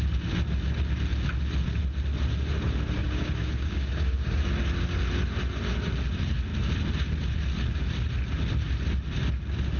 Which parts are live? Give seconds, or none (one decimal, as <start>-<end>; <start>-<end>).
0.0-3.0; 4.4-9.8